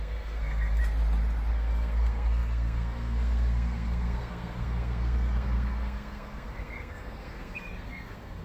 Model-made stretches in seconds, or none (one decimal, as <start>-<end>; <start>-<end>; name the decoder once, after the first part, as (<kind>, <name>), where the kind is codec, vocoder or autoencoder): 0.0-0.8 (codec, SNAC); 1.5-8.4